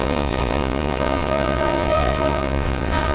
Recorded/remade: remade